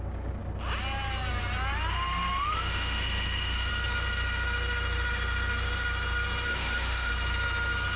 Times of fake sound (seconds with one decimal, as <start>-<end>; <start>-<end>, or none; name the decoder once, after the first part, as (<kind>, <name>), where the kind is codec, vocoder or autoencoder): 1.9-3.7 (autoencoder, DAC-VAE); 6.5-7.1